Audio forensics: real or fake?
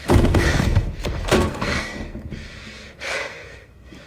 fake